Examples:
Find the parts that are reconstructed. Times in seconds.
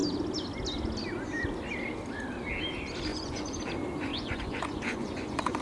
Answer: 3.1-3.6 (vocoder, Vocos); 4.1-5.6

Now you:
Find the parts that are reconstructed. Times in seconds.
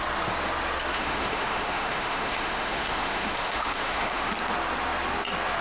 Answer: 0.9-4.3 (autoencoder, DAC-VAE)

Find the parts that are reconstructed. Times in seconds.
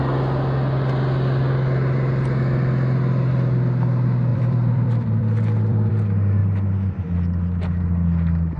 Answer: 4.3-5.9 (vocoder, BigVGAN v2); 6.4-7.0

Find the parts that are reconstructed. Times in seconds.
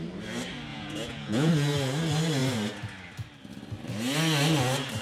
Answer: 0.7-1.5 (vocoder, Vocos)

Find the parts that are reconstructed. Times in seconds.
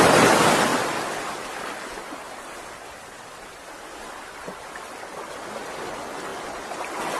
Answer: none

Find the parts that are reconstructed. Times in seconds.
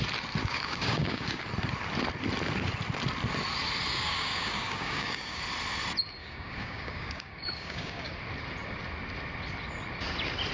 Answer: 0.4-1.4 (codec, DAC); 3.9-5.4; 6.2-8.1